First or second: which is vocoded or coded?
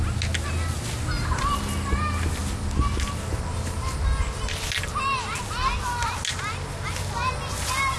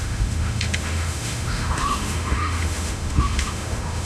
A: second